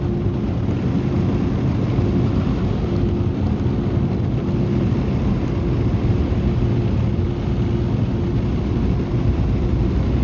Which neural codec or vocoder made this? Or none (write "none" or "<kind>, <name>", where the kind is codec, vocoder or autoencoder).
none